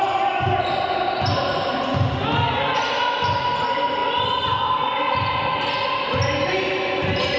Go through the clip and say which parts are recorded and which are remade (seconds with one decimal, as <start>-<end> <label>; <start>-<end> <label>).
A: 0.0-7.4 recorded